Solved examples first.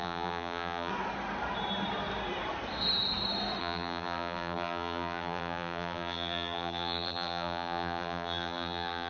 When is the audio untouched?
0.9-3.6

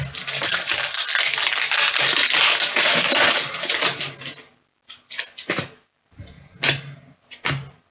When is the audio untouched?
0.0-7.9

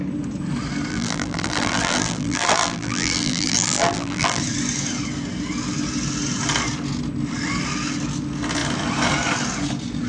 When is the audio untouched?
0.0-0.9; 4.4-10.1

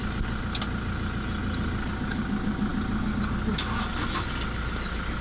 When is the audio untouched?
0.0-5.2

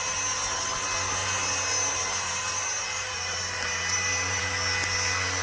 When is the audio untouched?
0.0-1.2; 4.4-5.4

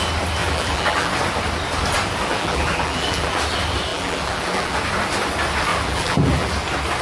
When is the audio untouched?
0.0-0.4; 1.1-2.3; 3.4-3.9; 4.8-5.7; 6.5-7.0

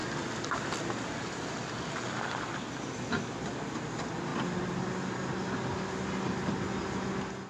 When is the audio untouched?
0.0-7.5

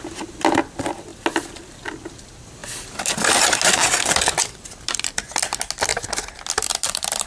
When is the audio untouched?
0.0-7.3